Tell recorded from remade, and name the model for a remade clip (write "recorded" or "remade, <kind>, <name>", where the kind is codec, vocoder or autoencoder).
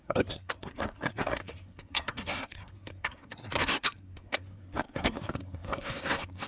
remade, codec, SNAC